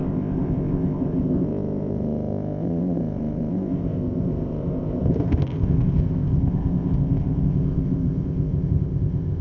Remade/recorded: remade